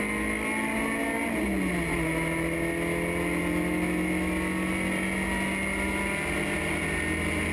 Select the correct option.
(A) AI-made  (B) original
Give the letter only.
B